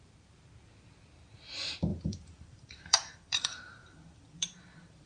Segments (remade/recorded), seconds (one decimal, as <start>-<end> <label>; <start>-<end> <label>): 0.0-1.9 recorded; 1.9-5.1 remade